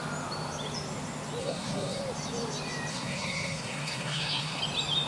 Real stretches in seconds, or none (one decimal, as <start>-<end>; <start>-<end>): 0.0-1.4; 2.0-2.9; 4.6-5.1